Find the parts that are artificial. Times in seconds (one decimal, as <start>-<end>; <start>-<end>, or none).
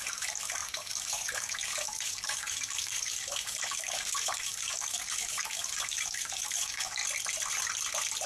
0.0-7.0